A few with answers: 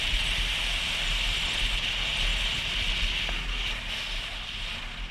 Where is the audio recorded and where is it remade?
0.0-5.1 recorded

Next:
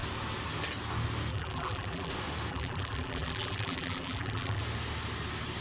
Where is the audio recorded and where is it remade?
0.0-1.3 recorded; 1.3-2.1 remade; 2.1-2.5 recorded; 2.5-4.6 remade; 4.6-5.6 recorded

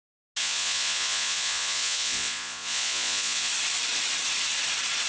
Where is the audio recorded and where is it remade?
0.0-0.4 recorded; 0.4-3.5 remade; 3.5-5.1 recorded

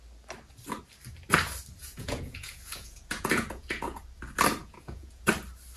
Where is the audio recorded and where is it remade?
0.0-1.8 recorded; 1.8-4.0 remade; 4.0-4.6 recorded; 4.6-5.3 remade; 5.3-5.8 recorded